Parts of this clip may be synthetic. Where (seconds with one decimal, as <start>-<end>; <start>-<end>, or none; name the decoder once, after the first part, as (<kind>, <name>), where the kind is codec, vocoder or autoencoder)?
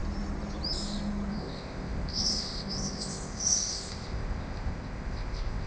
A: 1.3-5.7 (codec, ZipCodec)